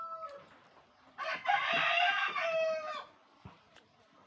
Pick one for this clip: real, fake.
real